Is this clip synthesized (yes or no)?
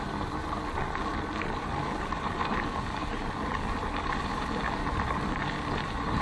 no